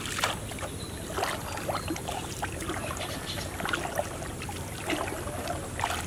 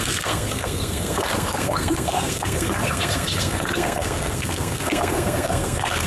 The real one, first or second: first